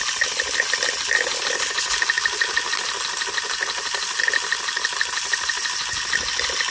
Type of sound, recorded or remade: recorded